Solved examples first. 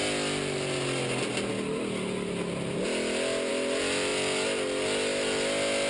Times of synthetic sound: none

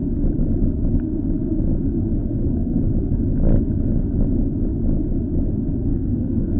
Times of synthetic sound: 2.2-2.8 (codec, SNAC); 5.9-6.6